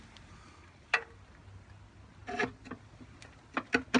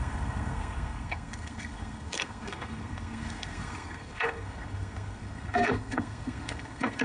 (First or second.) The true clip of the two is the first